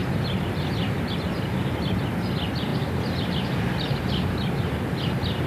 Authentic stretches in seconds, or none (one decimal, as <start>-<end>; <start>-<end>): 0.0-2.7; 3.7-5.5